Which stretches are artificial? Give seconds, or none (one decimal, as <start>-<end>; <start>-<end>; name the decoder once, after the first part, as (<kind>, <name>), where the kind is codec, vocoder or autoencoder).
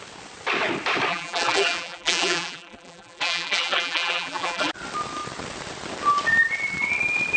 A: 1.1-4.7 (vocoder, BigVGAN v2)